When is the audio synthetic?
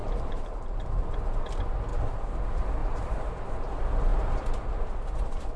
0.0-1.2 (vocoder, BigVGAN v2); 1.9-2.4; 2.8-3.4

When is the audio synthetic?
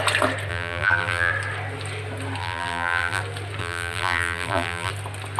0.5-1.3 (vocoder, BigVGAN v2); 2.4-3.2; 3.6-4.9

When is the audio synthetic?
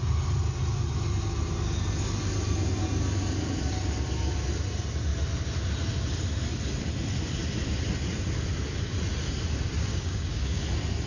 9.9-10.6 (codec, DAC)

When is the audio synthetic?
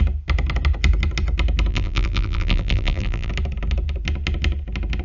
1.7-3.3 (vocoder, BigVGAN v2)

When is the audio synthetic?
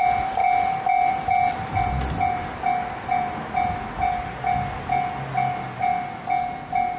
none